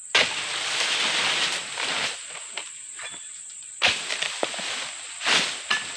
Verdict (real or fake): real